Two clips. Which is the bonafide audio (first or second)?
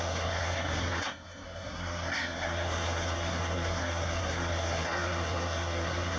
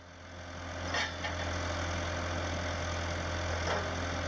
second